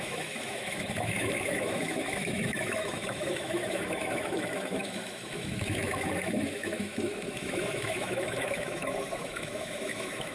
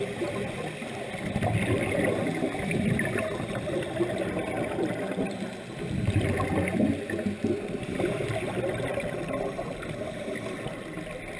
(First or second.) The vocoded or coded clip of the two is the first